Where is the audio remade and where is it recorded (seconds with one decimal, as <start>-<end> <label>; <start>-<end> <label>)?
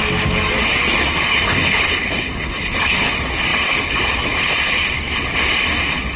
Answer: 0.0-1.3 recorded; 1.3-3.1 remade; 3.1-6.2 recorded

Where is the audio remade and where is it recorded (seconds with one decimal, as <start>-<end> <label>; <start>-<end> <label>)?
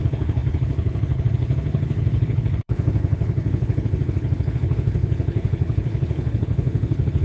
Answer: 0.0-7.2 remade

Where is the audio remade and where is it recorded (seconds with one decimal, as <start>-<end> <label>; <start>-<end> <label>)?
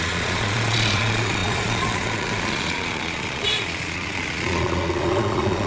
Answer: 0.0-5.7 remade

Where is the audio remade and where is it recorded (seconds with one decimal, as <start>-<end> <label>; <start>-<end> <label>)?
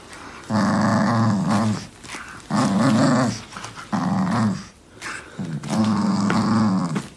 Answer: 0.0-5.8 recorded; 5.8-6.3 remade; 6.3-7.2 recorded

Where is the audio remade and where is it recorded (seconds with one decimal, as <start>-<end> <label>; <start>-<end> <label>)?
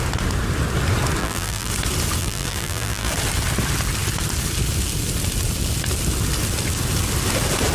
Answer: 0.0-1.2 recorded; 1.2-1.7 remade; 1.7-2.2 recorded; 2.2-3.1 remade; 3.1-7.7 recorded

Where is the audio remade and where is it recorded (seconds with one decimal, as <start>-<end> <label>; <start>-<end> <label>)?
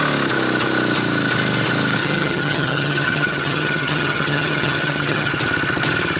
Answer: 0.0-2.0 recorded; 2.0-5.3 remade; 5.3-6.2 recorded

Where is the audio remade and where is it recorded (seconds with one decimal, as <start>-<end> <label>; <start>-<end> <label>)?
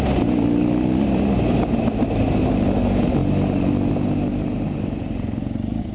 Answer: 0.0-5.9 recorded